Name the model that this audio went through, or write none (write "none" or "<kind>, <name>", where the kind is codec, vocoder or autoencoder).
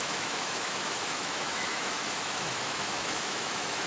autoencoder, DAC-VAE